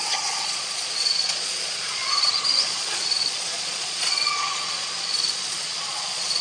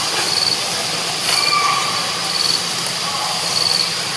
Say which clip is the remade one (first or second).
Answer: first